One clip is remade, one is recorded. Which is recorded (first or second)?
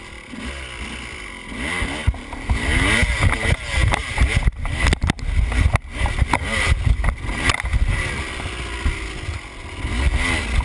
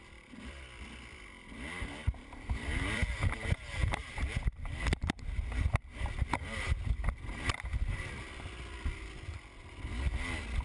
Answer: first